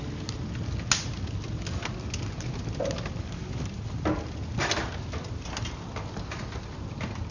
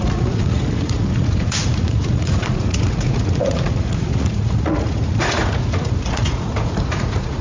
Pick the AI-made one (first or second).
second